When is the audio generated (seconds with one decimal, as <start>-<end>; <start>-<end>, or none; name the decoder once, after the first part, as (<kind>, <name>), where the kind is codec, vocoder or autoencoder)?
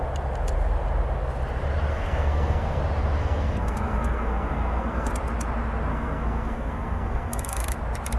1.9-2.8 (codec, SNAC); 3.2-5.1; 5.9-7.7